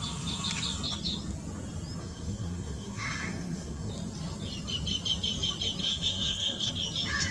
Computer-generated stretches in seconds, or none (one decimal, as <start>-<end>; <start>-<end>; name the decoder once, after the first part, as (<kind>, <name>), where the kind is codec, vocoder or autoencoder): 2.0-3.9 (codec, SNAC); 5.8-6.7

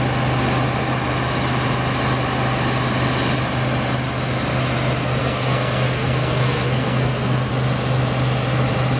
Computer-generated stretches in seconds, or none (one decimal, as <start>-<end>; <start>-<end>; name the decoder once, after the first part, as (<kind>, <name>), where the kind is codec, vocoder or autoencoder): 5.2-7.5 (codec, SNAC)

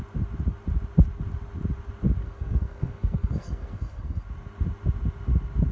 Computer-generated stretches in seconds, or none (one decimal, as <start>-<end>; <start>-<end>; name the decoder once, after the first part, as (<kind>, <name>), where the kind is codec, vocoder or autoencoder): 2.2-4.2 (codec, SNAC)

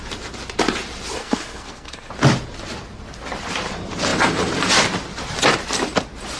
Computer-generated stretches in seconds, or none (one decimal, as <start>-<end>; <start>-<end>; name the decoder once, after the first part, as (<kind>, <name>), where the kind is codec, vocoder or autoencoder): 1.2-2.1 (codec, SNAC)

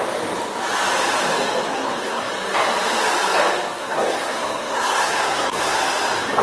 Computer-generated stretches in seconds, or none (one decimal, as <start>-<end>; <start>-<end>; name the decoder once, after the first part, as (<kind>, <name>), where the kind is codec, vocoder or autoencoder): 1.7-2.3 (codec, SNAC); 3.8-5.8